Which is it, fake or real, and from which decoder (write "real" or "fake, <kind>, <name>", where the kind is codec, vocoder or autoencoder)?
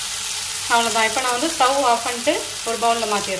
real